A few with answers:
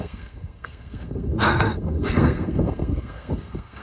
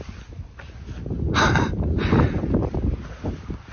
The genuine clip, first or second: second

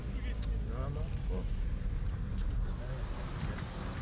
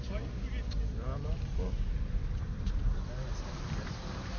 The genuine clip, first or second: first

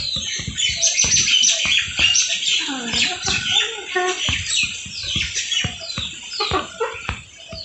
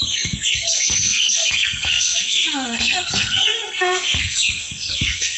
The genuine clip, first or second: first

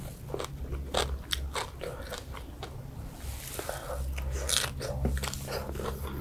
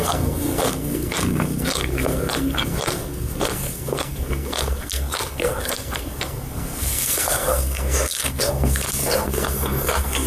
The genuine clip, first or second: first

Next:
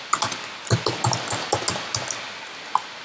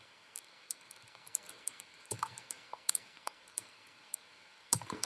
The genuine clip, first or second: first